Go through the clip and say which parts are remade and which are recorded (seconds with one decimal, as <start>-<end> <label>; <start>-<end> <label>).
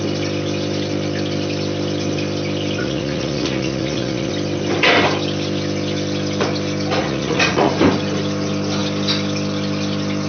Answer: 0.0-2.8 recorded; 2.8-4.3 remade; 4.3-7.0 recorded; 7.0-7.7 remade; 7.7-10.3 recorded